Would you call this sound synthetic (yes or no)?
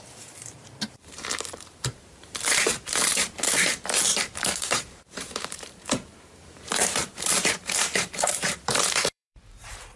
yes